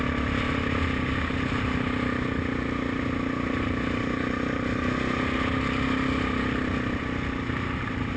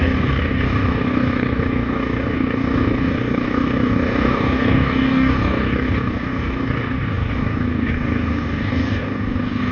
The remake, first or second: second